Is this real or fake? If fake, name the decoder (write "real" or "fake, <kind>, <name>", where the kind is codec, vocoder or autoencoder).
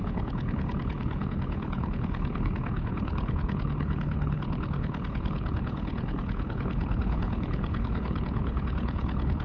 fake, codec, HILCodec